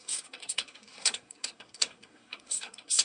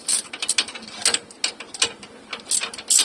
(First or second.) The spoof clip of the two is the first